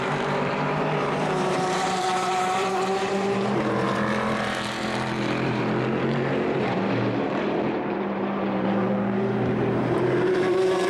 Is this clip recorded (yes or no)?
no